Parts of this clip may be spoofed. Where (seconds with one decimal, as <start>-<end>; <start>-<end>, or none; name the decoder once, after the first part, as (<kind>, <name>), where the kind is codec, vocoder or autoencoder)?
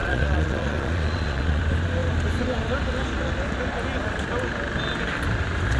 0.0-1.6 (vocoder, Vocos)